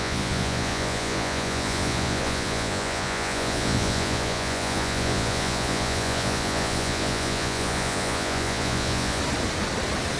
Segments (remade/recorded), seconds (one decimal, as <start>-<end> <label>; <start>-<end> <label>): 0.0-9.2 remade; 9.2-10.2 recorded